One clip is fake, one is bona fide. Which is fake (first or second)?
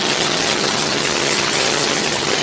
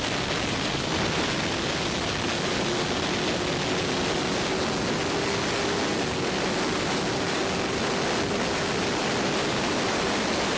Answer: first